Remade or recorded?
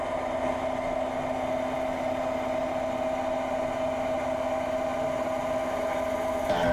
recorded